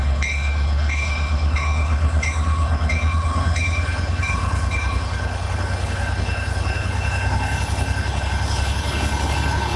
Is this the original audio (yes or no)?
no